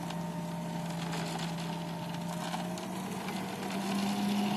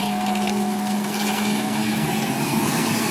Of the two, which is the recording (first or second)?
first